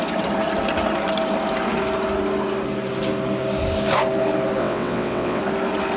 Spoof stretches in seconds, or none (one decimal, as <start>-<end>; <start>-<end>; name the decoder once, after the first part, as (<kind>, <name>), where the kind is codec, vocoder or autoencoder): 4.6-5.4 (vocoder, WaveNeXt)